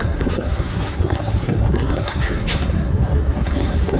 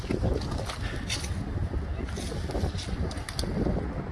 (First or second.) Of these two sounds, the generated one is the first